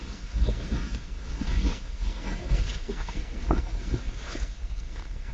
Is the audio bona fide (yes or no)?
no